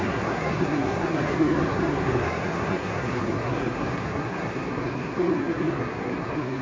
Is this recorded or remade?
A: remade